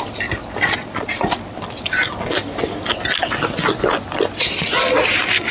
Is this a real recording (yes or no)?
yes